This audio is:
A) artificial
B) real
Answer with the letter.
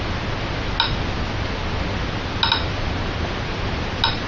B